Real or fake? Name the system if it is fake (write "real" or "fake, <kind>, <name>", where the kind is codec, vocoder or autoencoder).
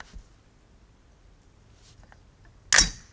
real